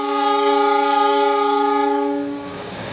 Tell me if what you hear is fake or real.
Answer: fake